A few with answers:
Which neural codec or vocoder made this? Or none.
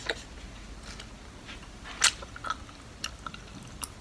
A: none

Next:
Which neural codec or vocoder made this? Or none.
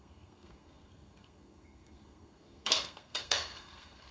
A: codec, SNAC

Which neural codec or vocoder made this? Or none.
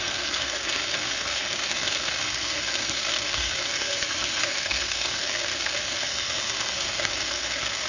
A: codec, SNAC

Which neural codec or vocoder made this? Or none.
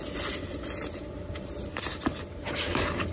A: none